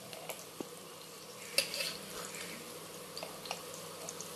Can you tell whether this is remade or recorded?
recorded